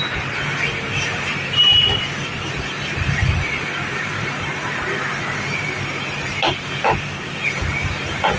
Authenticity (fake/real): fake